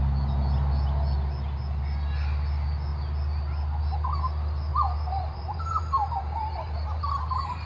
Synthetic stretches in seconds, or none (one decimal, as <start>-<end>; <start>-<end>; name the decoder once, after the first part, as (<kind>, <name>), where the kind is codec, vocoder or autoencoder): 4.7-7.7 (vocoder, BigVGAN v2)